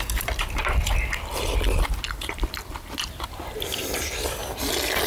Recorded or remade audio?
recorded